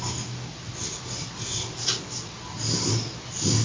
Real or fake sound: real